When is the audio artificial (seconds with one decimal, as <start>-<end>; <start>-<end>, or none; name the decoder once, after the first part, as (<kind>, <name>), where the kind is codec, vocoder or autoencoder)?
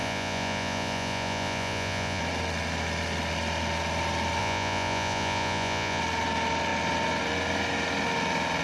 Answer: 0.0-2.2 (vocoder, Vocos); 4.4-6.0